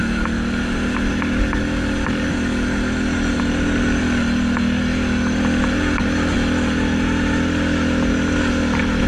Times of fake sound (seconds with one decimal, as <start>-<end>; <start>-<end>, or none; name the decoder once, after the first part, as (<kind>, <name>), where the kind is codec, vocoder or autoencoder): none